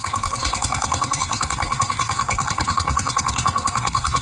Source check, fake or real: fake